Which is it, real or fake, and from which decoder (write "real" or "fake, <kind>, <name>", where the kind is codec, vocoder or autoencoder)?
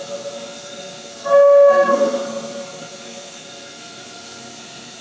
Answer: fake, codec, SNAC